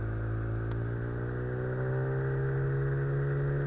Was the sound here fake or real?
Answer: real